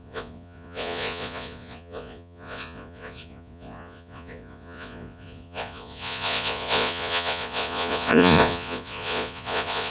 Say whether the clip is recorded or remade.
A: remade